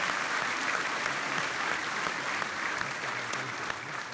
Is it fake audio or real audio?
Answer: real